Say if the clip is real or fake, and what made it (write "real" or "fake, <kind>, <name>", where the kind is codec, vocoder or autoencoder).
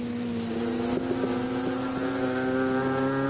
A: real